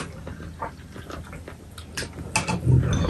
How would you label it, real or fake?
real